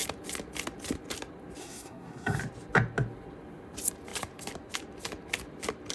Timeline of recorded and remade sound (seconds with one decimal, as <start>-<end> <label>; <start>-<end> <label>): 0.0-1.6 recorded; 1.6-2.4 remade; 2.4-5.9 recorded